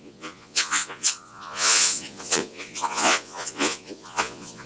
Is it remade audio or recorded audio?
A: remade